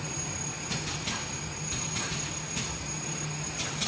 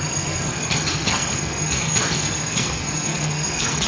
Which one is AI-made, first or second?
second